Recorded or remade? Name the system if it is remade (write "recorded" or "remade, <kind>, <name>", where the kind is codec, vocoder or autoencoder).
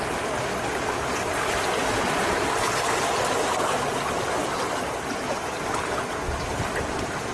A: recorded